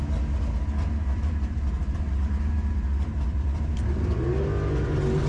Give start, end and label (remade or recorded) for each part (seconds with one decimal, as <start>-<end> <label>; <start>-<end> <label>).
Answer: 0.0-1.0 recorded; 1.0-4.2 remade; 4.2-5.3 recorded